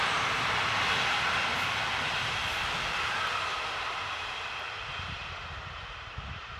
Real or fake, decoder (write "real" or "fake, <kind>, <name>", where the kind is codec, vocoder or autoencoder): real